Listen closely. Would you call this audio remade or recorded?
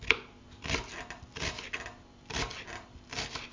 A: recorded